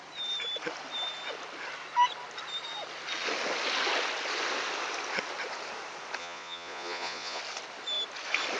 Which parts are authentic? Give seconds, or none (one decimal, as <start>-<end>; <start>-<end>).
0.0-6.2; 7.4-8.6